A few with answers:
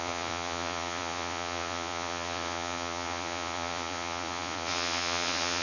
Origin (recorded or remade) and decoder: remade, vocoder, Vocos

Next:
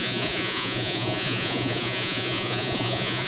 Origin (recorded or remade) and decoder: remade, vocoder, Vocos